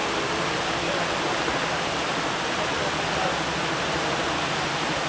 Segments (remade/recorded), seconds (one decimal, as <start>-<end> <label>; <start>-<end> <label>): 0.0-5.1 recorded